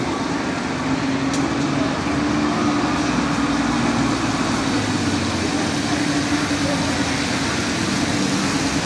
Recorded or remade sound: recorded